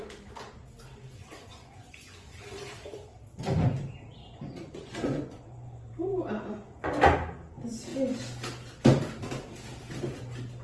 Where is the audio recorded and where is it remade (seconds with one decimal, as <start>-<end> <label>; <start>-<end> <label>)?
0.0-1.2 recorded; 1.2-2.3 remade; 2.3-4.2 recorded; 4.2-6.9 remade; 6.9-10.6 recorded